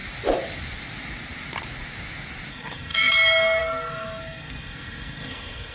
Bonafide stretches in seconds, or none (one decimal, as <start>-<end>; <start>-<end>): 0.0-2.5